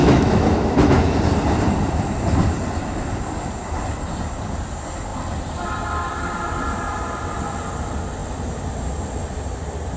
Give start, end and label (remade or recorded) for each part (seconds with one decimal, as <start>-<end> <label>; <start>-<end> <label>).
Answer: 0.0-1.2 remade; 1.2-10.0 recorded